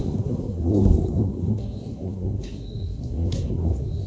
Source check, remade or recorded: remade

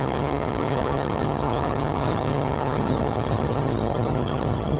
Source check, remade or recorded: remade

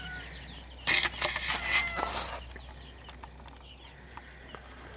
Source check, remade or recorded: recorded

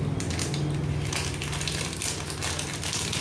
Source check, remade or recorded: recorded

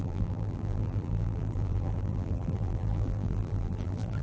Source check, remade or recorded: remade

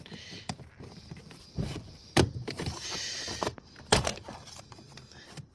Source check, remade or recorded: remade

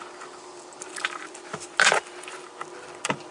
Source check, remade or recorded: recorded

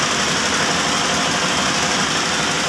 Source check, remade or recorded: recorded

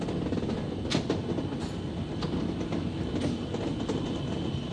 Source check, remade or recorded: recorded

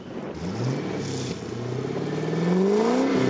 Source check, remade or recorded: recorded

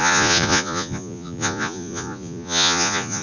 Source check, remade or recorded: remade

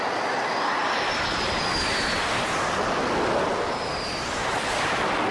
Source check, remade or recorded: recorded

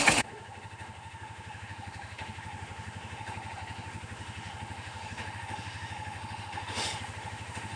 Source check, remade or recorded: remade